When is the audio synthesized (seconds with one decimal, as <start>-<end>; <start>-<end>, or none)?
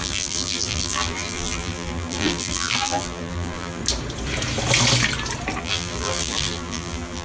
0.0-3.8; 5.6-7.2